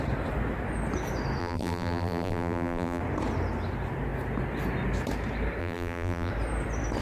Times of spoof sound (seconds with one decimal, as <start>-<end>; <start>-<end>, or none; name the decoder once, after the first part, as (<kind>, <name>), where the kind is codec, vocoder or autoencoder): 1.4-3.0 (vocoder, BigVGAN v2); 5.6-6.3